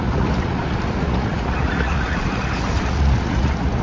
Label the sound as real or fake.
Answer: fake